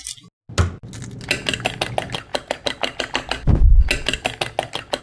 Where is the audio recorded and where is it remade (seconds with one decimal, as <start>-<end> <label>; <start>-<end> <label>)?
0.0-5.0 recorded